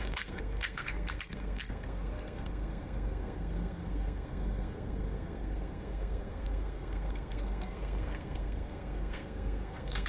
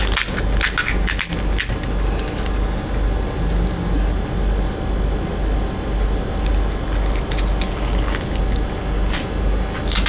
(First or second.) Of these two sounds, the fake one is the first